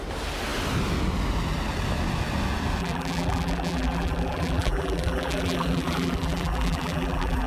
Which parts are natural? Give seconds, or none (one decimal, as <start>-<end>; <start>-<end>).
0.0-2.8